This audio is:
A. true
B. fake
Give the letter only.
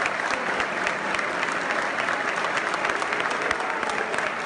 A